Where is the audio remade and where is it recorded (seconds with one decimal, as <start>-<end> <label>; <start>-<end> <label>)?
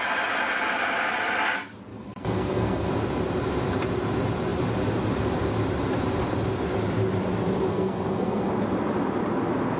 0.0-1.9 recorded; 1.9-2.9 remade; 2.9-7.7 recorded; 7.7-8.5 remade; 8.5-9.8 recorded